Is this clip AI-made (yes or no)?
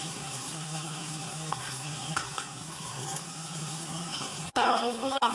yes